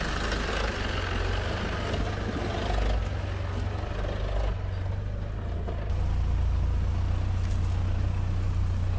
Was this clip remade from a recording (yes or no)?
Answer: no